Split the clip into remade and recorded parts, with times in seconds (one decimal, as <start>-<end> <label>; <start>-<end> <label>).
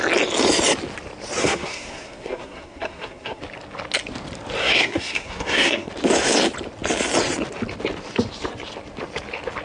0.0-1.4 recorded; 1.4-3.4 remade; 3.4-4.6 recorded; 4.6-5.9 remade; 5.9-9.6 recorded